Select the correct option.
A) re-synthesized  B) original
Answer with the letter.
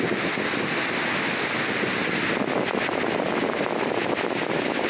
B